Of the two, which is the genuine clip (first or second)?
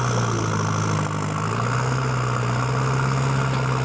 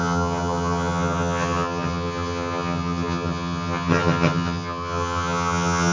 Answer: first